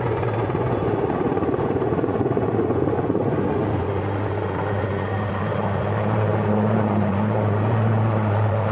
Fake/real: fake